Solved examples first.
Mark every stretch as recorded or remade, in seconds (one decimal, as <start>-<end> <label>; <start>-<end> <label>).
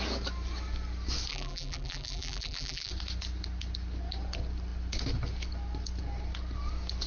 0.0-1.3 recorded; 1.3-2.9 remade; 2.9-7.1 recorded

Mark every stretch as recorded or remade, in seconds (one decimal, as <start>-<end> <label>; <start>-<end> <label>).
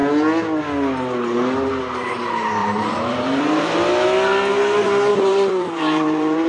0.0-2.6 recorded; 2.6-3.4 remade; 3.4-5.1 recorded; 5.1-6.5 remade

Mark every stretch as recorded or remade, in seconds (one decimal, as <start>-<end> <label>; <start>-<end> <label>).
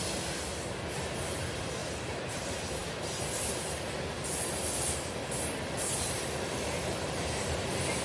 0.0-1.8 recorded; 1.8-2.4 remade; 2.4-8.0 recorded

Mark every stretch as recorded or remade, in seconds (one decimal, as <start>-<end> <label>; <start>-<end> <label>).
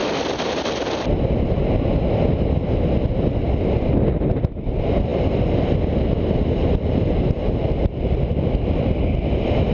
0.0-1.6 remade; 1.6-5.1 recorded; 5.1-9.0 remade; 9.0-9.7 recorded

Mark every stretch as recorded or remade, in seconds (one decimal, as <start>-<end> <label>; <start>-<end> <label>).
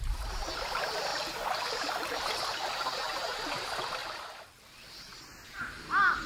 0.0-1.1 recorded; 1.1-1.9 remade; 1.9-6.3 recorded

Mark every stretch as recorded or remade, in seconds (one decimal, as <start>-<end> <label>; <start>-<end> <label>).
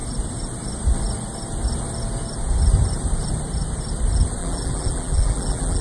0.0-4.4 recorded; 4.4-5.8 remade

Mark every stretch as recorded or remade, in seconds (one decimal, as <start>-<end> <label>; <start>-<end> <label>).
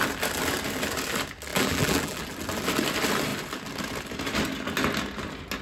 0.0-1.5 recorded; 1.5-2.2 remade; 2.2-5.6 recorded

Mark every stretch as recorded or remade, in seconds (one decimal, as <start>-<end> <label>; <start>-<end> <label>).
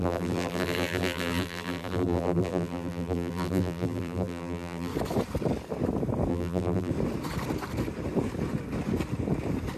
0.0-4.9 remade; 4.9-6.3 recorded; 6.3-6.9 remade; 6.9-9.8 recorded